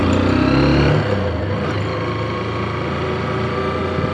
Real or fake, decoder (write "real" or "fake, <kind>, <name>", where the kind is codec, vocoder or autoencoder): real